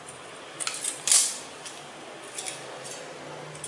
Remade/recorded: recorded